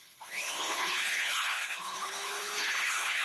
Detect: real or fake fake